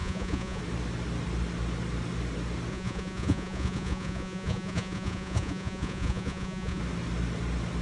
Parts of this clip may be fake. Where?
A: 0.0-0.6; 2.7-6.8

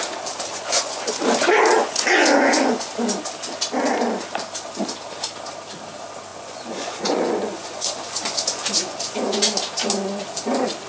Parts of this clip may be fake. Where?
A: 0.5-1.2; 1.8-2.9; 6.3-9.4

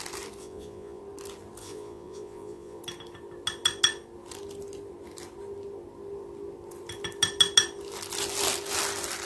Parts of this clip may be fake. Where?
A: 0.4-1.0; 1.6-2.8